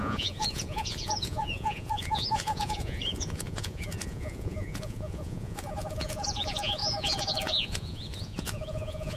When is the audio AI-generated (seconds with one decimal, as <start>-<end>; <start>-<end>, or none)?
0.0-9.2